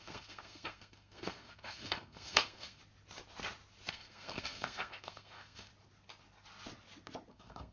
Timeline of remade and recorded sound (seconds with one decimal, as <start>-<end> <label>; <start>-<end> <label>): 0.0-2.8 remade; 2.8-3.9 recorded; 3.9-5.7 remade; 5.7-7.3 recorded; 7.3-7.7 remade